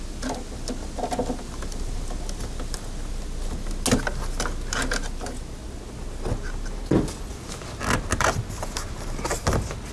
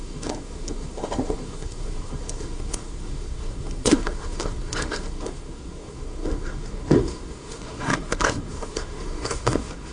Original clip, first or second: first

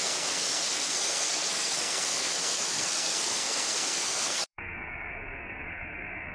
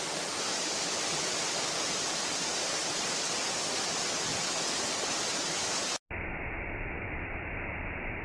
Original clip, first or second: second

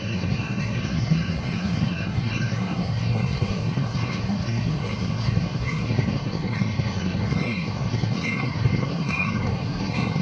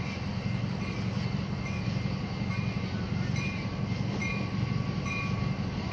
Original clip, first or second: second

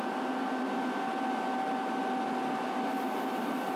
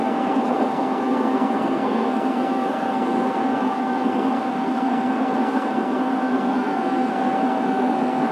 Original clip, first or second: first